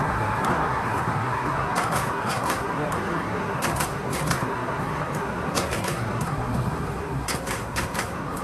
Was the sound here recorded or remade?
remade